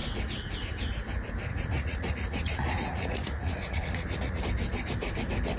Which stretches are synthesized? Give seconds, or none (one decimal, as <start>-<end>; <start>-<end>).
1.5-4.4